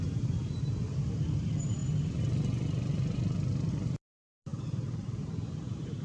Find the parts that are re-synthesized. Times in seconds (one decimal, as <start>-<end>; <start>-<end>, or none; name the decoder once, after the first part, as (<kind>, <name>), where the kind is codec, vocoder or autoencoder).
0.0-1.8 (vocoder, BigVGAN v2); 3.7-6.0